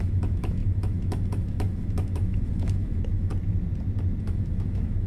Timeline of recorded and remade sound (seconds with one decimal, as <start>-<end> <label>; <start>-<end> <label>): 0.0-3.3 remade; 3.3-4.2 recorded; 4.2-5.1 remade